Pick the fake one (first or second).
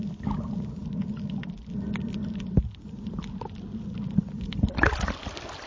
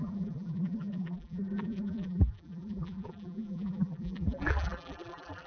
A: second